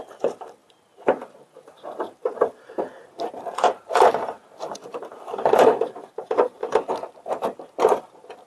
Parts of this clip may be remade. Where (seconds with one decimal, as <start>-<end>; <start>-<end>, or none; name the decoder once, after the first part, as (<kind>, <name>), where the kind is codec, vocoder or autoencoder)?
0.0-2.9 (vocoder, BigVGAN v2); 3.4-6.6